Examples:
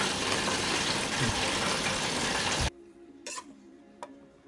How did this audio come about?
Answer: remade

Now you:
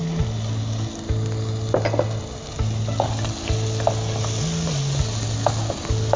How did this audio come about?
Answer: recorded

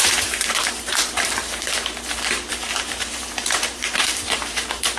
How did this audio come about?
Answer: remade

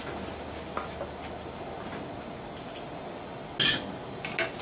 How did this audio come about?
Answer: recorded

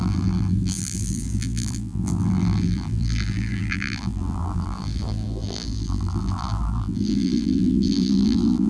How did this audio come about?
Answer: remade